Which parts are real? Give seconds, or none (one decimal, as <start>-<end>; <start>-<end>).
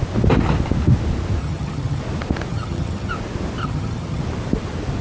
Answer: 0.0-1.4; 2.0-2.5; 3.1-3.6; 4.2-5.0